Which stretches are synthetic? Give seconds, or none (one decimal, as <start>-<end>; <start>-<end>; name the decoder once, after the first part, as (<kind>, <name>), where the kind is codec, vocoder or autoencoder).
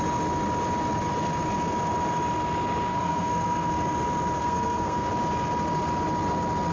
2.9-3.7 (codec, SNAC); 4.4-5.1